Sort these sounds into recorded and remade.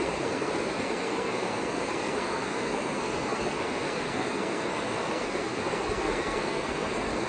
remade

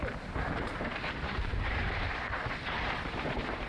remade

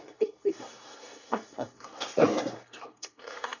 remade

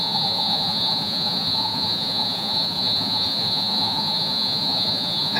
remade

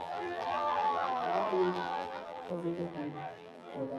remade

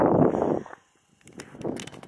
recorded